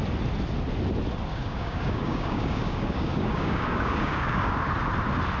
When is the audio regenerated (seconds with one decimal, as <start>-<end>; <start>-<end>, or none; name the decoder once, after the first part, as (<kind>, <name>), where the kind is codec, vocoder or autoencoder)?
1.3-4.5 (codec, DAC)